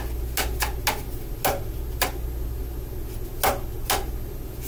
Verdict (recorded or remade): recorded